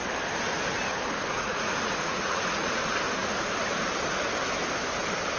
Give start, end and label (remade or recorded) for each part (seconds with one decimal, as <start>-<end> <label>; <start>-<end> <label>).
0.0-1.3 recorded; 1.3-2.8 remade; 2.8-5.4 recorded